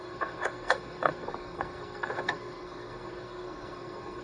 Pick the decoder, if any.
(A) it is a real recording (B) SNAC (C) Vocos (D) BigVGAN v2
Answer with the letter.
B